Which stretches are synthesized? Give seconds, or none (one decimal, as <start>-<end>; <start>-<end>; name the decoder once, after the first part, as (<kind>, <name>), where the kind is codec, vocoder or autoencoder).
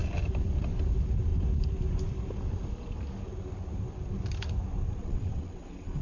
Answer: 5.0-6.0 (vocoder, WaveNeXt)